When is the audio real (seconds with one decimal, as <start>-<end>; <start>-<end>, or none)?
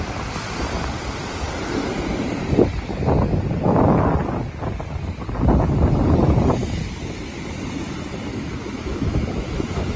0.0-8.3